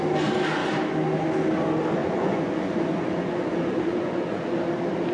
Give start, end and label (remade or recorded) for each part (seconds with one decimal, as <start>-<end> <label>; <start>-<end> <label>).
0.0-2.0 recorded; 2.0-4.6 remade; 4.6-5.1 recorded